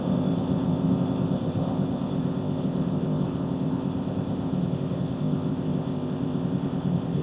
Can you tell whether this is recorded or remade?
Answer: remade